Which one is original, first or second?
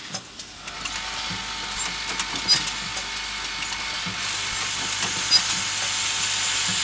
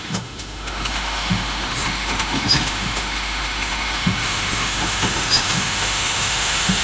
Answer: first